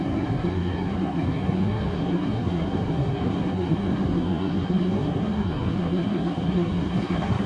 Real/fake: fake